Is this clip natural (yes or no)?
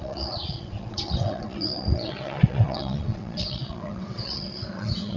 no